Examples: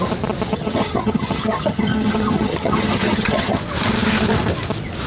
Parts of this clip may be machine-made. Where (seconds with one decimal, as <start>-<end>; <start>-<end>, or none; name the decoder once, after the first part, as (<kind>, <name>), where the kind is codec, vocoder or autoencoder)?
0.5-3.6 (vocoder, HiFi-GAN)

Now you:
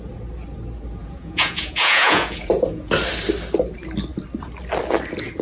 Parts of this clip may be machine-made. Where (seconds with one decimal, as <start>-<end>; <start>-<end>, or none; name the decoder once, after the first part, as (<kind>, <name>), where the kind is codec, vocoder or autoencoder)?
1.0-2.9 (vocoder, Vocos)

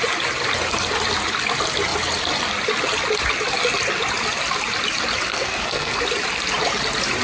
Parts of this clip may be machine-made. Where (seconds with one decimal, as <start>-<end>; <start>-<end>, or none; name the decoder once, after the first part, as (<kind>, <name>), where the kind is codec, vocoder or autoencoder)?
5.3-6.0 (codec, SNAC)

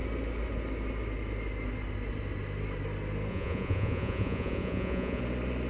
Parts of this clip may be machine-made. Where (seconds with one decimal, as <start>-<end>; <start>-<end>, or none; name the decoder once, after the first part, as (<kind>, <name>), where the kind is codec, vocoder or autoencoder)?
3.3-5.2 (vocoder, Vocos)

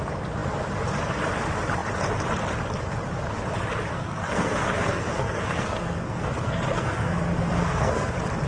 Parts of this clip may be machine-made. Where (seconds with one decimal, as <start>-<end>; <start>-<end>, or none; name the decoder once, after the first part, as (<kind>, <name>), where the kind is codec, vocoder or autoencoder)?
3.9-8.1 (codec, SNAC)